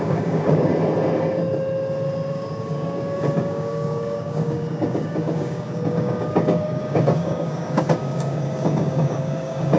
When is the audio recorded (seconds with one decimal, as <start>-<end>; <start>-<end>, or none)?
0.7-2.3